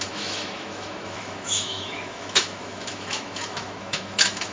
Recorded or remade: remade